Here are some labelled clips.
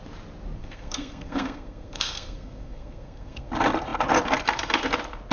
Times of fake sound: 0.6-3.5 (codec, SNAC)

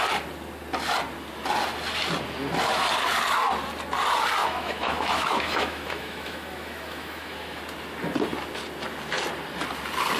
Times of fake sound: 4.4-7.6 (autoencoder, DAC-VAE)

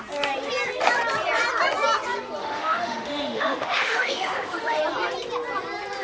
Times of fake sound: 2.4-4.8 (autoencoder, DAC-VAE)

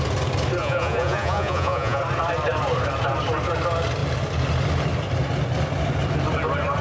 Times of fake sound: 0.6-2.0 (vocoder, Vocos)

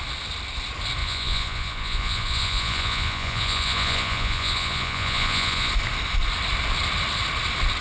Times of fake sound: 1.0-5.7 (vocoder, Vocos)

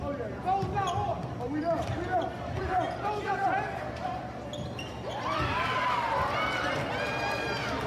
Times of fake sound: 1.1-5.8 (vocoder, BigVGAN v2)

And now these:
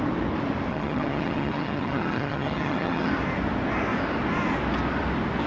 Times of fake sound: 0.7-3.1 (vocoder, HiFi-GAN)